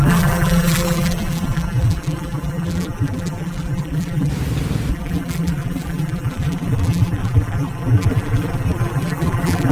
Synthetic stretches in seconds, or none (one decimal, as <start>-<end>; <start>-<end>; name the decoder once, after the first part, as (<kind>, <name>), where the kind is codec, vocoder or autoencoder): 0.0-4.3 (vocoder, BigVGAN v2); 4.9-9.7